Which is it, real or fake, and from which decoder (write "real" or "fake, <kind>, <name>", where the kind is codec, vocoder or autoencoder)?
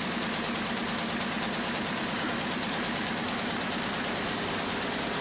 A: fake, vocoder, BigVGAN v2